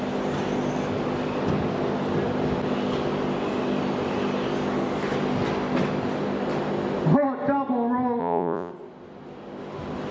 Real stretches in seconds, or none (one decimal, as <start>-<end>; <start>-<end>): 0.0-8.2; 8.7-10.1